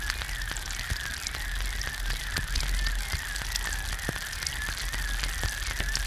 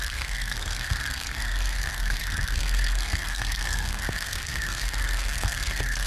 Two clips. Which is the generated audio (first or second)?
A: second